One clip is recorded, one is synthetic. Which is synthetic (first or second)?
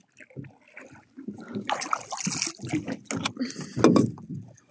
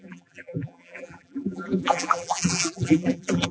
second